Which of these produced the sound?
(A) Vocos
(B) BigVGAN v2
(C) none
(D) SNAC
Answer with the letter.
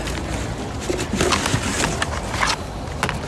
C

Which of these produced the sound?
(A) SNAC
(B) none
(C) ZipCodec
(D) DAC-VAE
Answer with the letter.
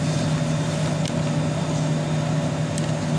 B